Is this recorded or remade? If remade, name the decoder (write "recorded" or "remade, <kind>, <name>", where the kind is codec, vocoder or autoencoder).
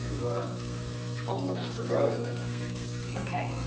remade, codec, SNAC